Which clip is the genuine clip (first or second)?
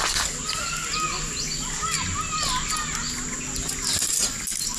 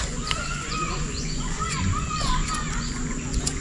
first